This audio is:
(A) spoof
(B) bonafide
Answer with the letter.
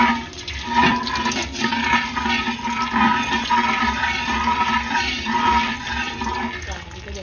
B